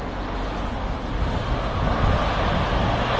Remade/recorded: recorded